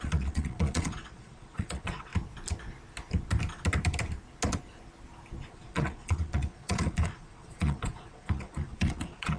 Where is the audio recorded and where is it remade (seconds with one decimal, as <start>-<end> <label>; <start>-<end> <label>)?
0.0-2.1 remade; 2.1-5.5 recorded; 5.5-9.4 remade